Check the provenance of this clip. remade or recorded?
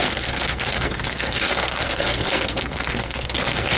remade